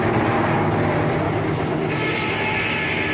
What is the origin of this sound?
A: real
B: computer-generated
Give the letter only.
A